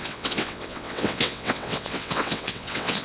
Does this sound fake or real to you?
fake